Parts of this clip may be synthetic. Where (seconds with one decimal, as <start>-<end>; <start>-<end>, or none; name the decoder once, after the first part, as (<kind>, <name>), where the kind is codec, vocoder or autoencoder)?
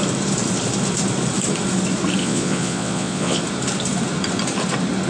2.2-3.4 (vocoder, Vocos)